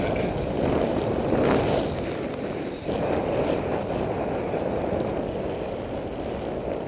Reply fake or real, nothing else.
real